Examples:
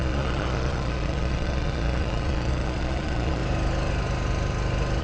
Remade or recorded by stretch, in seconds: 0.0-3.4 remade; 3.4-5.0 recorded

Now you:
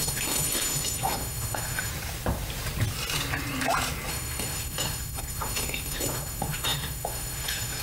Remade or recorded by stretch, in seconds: 0.0-1.9 remade; 1.9-4.1 recorded; 4.1-7.8 remade